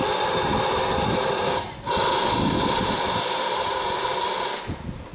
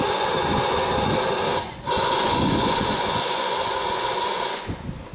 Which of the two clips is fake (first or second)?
second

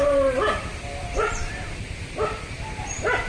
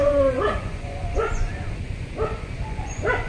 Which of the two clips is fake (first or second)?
second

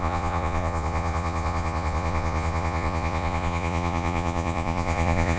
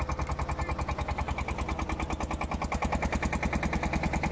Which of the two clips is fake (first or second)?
first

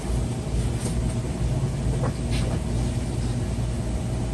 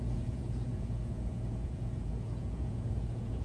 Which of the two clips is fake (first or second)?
second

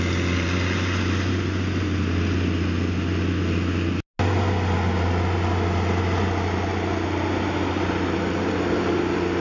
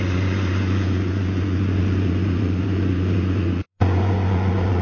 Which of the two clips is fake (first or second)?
second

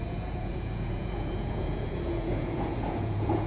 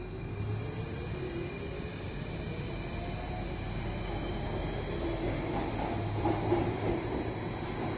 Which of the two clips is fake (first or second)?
first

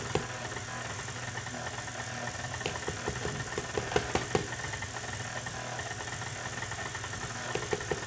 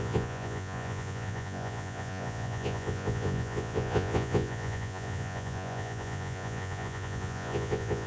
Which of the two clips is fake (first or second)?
second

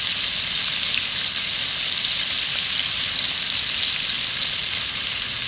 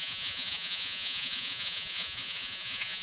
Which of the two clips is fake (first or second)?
second